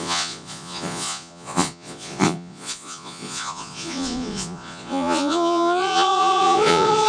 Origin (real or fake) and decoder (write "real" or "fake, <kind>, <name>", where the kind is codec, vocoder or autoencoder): fake, vocoder, Vocos